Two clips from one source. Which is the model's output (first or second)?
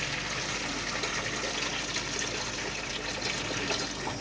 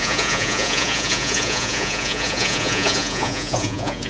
second